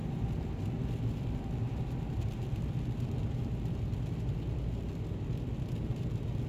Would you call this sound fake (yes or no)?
no